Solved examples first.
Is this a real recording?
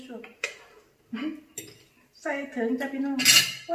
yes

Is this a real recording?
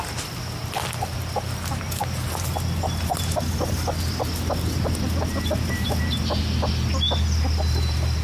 yes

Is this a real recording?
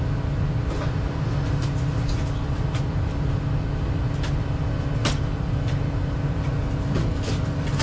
yes